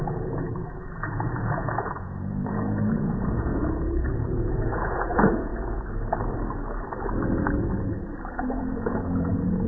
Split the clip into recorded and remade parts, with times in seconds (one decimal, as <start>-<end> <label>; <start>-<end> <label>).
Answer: 0.0-5.5 remade; 5.5-8.3 recorded; 8.3-9.7 remade